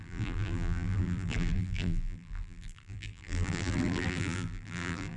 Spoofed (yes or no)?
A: yes